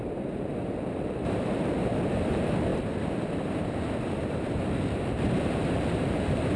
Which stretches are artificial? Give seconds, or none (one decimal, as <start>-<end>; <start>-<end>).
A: 0.0-2.7; 4.1-6.6